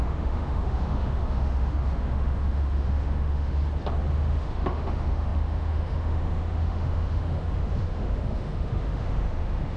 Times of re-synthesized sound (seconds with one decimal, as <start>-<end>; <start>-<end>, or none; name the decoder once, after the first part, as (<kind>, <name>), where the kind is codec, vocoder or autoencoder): 0.0-3.6 (autoencoder, DAC-VAE); 4.1-9.8